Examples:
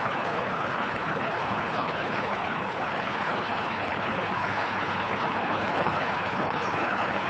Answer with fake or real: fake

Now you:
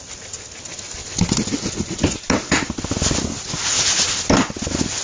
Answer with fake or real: real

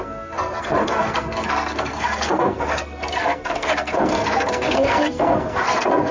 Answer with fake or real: fake